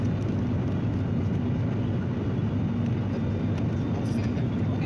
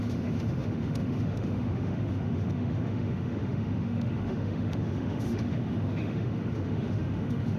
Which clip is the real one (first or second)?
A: first